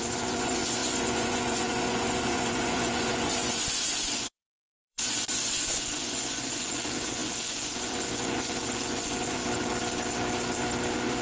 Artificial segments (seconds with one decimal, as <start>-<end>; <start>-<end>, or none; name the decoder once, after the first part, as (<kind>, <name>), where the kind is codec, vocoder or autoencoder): 0.0-9.4 (vocoder, Vocos)